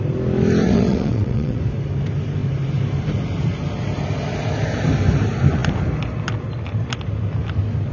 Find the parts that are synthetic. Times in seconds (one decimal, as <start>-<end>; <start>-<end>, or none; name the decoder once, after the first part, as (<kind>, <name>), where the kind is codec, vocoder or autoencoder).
0.6-1.6 (vocoder, WaveNeXt)